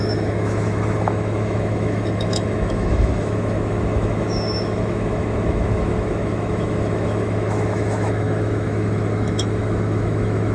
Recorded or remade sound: remade